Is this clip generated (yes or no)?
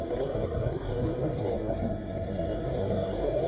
yes